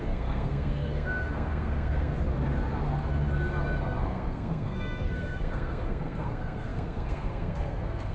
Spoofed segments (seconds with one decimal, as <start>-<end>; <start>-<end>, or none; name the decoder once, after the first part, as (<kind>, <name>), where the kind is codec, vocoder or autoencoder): 0.0-2.1 (codec, SNAC); 3.8-8.1